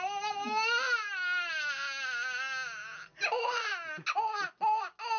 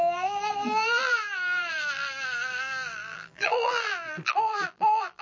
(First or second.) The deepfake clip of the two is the second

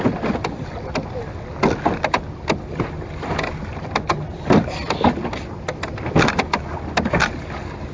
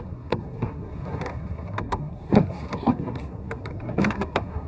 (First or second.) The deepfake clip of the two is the second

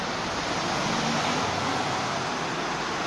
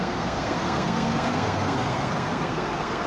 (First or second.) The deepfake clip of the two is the second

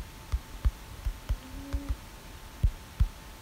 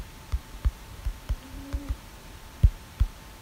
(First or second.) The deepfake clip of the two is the second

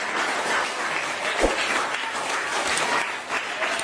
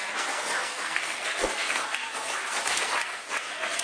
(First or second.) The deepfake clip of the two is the second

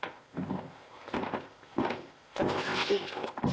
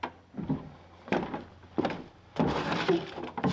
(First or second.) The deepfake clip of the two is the first